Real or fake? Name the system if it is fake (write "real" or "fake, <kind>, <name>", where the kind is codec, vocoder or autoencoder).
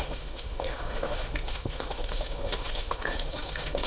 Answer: fake, autoencoder, DAC-VAE